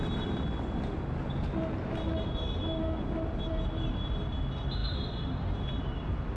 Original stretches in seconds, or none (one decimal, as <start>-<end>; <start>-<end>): 0.0-6.4